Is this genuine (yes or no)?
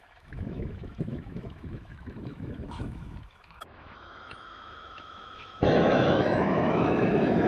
no